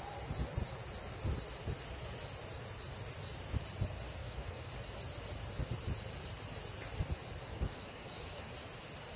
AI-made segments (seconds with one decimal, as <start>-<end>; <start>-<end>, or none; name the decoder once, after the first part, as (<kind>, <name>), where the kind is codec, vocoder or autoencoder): 4.2-4.7 (codec, DAC); 7.5-8.5